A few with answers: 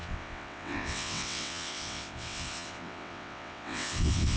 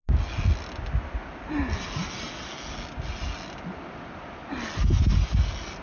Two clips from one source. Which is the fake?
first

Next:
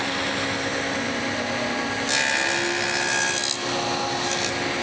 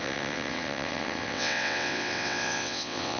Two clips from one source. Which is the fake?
second